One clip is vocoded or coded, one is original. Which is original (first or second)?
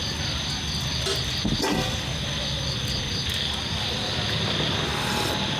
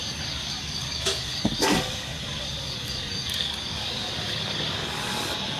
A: first